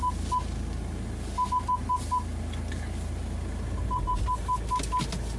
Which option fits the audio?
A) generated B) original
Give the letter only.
B